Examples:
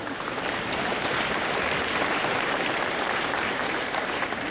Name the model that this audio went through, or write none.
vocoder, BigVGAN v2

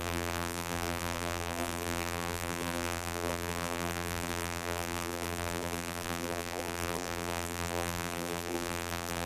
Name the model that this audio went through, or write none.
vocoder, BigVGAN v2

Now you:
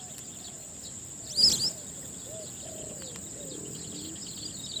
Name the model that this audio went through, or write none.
none